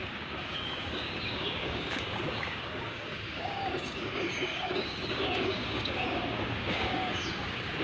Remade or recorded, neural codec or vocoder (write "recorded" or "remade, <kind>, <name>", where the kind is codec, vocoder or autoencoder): remade, codec, DAC